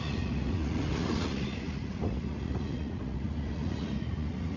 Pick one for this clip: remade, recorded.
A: remade